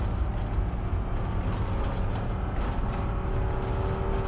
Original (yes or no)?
yes